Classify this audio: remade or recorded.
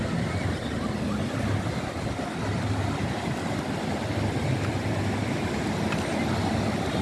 recorded